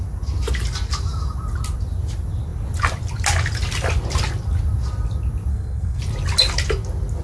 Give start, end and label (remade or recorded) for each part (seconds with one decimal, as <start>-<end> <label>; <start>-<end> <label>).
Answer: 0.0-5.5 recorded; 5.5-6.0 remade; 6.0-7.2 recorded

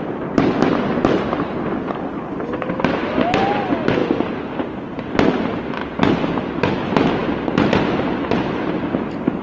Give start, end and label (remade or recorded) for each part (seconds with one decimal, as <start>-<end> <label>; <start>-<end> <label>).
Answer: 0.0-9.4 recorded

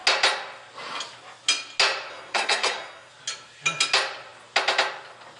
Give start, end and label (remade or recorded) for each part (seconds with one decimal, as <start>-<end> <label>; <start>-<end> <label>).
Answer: 0.0-2.1 recorded; 2.1-3.1 remade; 3.1-5.4 recorded